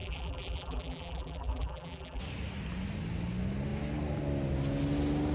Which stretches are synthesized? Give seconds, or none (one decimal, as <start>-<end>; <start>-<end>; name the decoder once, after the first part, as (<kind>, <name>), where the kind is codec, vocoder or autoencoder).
0.0-2.2 (vocoder, BigVGAN v2)